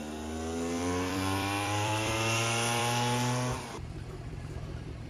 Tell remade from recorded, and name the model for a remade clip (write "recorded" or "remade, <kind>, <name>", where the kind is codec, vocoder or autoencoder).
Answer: remade, vocoder, BigVGAN v2